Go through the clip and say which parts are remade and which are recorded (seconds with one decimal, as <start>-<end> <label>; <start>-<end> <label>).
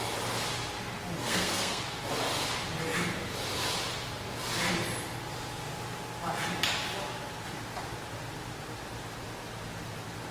0.0-1.2 recorded; 1.2-1.8 remade; 1.8-10.3 recorded